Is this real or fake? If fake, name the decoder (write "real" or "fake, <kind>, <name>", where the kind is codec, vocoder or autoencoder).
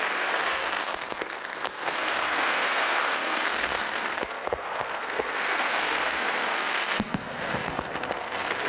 fake, codec, SNAC